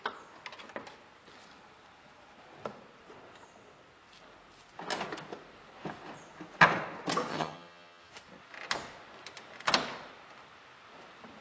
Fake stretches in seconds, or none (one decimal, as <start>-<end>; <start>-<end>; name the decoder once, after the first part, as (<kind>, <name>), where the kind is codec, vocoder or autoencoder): 7.3-8.1 (vocoder, HiFi-GAN)